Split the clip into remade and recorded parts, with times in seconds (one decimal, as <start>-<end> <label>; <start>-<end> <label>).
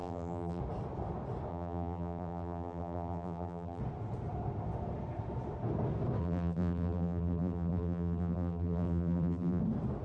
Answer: 0.0-0.6 remade; 0.6-1.5 recorded; 1.5-3.8 remade; 3.8-6.2 recorded; 6.2-9.6 remade; 9.6-10.0 recorded